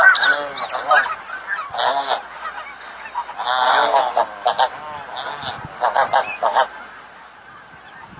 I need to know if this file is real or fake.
real